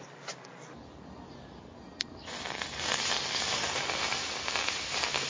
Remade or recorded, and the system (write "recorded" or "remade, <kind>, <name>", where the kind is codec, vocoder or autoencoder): recorded